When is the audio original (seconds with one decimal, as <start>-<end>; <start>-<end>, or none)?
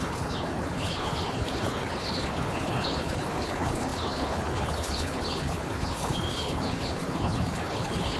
none